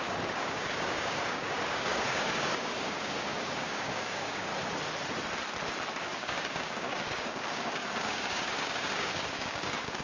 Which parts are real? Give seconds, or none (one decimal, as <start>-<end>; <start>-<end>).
4.5-5.9